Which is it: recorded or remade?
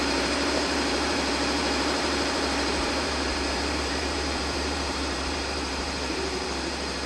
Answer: remade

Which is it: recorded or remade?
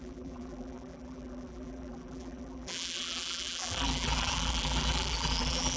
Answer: remade